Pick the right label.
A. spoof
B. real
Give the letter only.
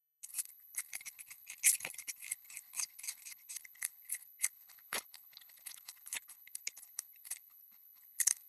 A